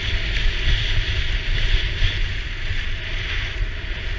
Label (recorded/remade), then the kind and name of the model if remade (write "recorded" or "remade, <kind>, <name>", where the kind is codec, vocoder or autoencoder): recorded